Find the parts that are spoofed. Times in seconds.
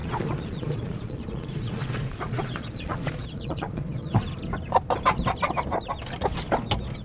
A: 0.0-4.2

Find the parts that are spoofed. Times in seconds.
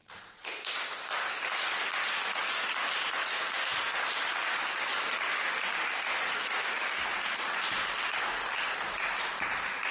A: none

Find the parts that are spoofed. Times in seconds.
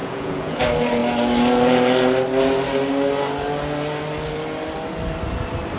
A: 0.0-0.6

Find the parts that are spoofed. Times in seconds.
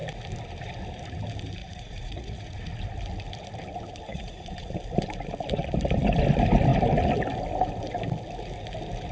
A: 1.6-2.7; 4.1-4.7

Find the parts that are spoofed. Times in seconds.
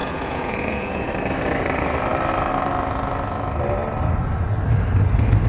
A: 0.0-1.1